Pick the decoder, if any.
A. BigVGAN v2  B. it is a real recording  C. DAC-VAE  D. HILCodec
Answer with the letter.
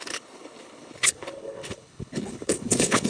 D